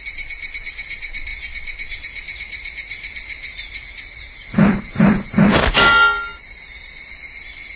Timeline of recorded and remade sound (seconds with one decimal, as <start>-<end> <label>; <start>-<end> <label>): 0.0-7.8 recorded